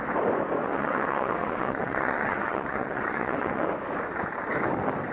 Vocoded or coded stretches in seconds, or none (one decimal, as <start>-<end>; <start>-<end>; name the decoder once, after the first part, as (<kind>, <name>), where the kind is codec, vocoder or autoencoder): 0.6-3.7 (vocoder, WaveNeXt)